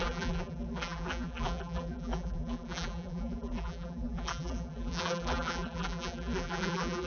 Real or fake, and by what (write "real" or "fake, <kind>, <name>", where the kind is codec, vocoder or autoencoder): fake, vocoder, BigVGAN v2